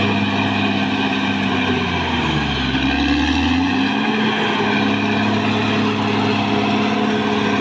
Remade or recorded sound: recorded